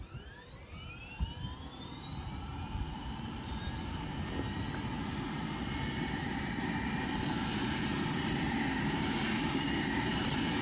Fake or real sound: fake